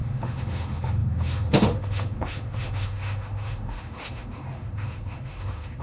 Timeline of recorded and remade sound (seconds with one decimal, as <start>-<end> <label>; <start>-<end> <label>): 0.0-5.8 remade